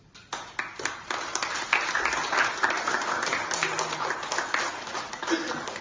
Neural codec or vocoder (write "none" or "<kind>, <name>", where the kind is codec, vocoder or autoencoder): none